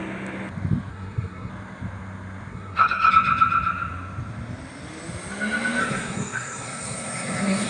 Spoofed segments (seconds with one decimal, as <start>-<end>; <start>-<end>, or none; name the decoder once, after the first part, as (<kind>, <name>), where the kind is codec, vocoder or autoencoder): 0.9-1.5 (codec, SNAC); 2.5-3.1; 5.8-7.7